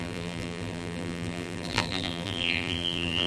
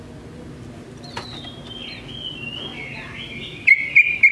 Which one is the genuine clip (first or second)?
second